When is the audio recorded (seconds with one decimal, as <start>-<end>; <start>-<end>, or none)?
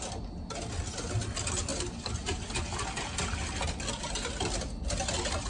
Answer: 0.0-5.5